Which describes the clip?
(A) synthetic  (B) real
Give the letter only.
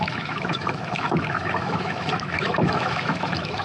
A